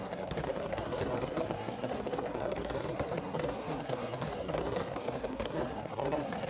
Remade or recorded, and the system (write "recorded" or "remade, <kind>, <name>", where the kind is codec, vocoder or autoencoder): remade, codec, SNAC